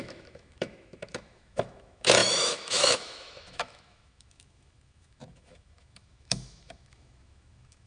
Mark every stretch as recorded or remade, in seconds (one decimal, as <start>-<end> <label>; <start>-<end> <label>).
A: 0.0-7.9 remade